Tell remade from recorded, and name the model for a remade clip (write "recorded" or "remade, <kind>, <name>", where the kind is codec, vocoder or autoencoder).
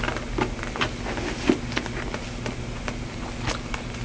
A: recorded